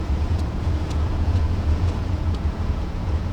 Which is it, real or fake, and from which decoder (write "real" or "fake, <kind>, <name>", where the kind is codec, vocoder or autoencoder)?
fake, vocoder, Vocos